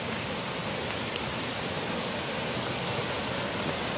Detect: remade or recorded recorded